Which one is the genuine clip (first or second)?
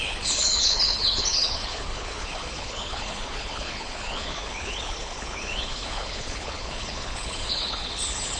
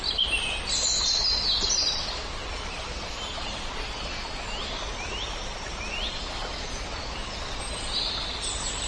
second